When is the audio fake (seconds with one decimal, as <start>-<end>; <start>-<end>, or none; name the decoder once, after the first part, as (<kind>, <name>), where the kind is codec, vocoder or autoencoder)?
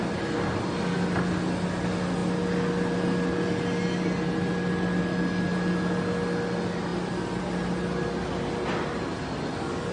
none